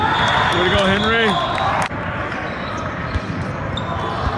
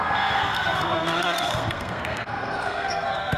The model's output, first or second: second